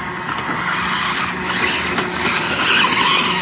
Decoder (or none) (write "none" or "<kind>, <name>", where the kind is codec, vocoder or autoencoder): none